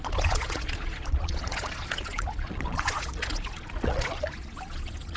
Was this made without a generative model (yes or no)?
no